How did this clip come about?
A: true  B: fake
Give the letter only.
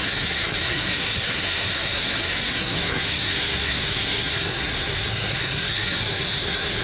B